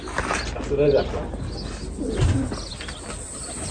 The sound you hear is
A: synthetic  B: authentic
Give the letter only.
B